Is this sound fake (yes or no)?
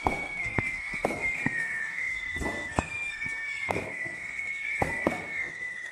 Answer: yes